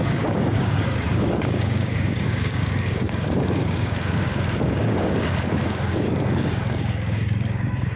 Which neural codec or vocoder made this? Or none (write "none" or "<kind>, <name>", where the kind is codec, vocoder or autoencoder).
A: codec, DAC